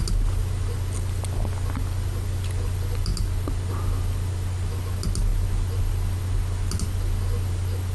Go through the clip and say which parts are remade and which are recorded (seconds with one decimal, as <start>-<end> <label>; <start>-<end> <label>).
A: 0.0-7.9 recorded